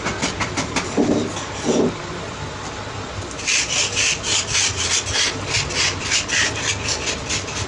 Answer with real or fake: real